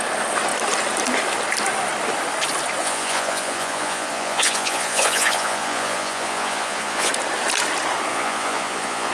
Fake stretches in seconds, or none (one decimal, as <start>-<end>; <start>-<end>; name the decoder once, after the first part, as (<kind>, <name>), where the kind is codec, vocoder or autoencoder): 2.8-7.1 (vocoder, Vocos); 8.1-9.1

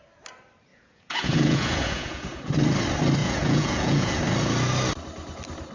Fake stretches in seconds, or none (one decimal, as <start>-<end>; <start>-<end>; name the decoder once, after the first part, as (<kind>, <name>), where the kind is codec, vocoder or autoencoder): 0.7-2.5 (vocoder, Vocos); 3.2-4.2